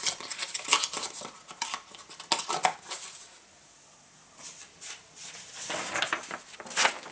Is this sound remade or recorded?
recorded